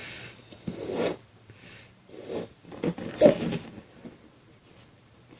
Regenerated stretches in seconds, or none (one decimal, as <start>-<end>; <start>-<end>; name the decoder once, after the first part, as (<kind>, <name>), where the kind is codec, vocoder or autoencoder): 0.0-5.4 (vocoder, BigVGAN v2)